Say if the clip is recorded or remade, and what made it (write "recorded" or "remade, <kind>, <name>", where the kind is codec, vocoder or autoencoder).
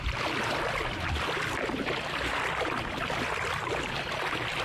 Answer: remade, vocoder, BigVGAN v2